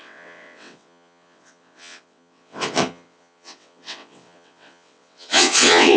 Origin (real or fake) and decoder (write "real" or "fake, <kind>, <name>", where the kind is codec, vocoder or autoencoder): fake, vocoder, WaveNeXt